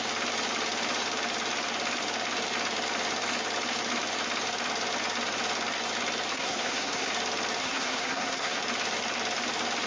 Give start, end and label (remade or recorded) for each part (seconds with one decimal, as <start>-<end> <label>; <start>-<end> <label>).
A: 0.0-6.3 recorded; 6.3-7.1 remade; 7.1-7.6 recorded; 7.6-8.6 remade; 8.6-9.9 recorded